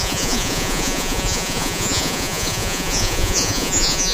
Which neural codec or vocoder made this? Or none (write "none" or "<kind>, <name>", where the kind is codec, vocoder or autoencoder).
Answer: vocoder, Vocos